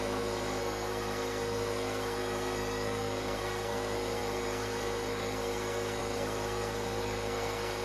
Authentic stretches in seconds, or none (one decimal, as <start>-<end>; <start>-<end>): none